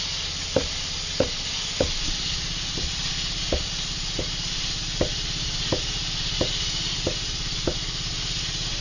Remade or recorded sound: recorded